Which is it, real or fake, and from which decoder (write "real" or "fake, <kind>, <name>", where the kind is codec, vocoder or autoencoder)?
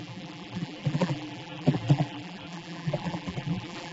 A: fake, vocoder, BigVGAN v2